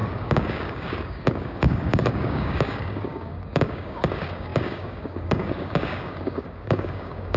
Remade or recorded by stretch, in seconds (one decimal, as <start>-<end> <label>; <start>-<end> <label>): 0.0-7.4 remade